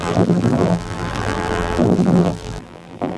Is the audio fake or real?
fake